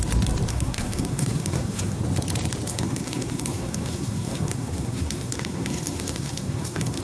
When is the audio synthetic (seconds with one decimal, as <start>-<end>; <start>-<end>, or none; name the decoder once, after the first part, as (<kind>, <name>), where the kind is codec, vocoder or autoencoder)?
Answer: 0.5-2.0 (codec, SNAC); 2.7-7.0